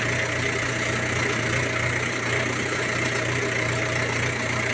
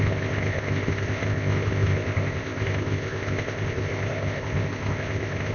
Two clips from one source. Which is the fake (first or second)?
second